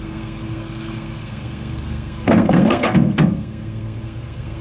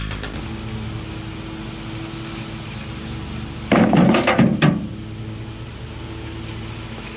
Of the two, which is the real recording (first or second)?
second